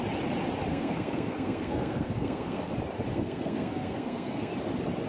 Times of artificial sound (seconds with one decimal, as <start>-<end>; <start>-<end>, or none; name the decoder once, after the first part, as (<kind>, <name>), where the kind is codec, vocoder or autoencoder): 0.7-2.7 (codec, SNAC); 3.1-4.5